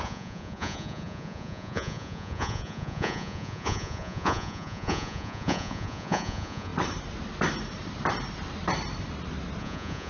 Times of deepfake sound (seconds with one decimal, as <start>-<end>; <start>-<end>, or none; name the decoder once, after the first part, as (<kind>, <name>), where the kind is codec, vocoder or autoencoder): 0.0-6.7 (vocoder, Vocos); 9.6-10.1